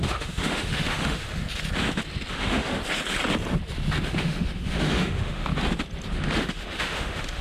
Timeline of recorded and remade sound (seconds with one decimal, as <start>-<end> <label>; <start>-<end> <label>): 0.0-1.4 remade; 1.4-2.3 recorded; 2.3-2.8 remade; 2.8-4.0 recorded; 4.0-5.5 remade; 5.5-6.1 recorded; 6.1-7.4 remade